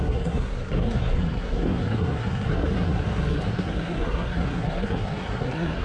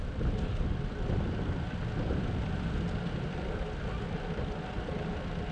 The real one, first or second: second